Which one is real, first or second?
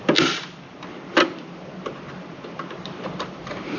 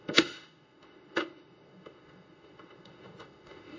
first